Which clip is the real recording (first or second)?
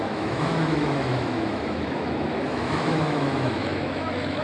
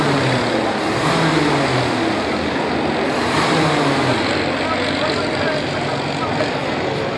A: second